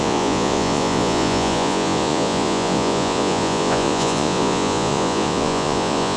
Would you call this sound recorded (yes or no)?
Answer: no